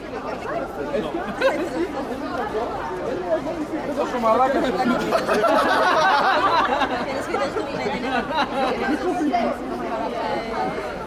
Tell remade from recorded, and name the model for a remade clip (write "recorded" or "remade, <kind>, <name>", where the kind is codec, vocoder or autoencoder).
remade, vocoder, BigVGAN v2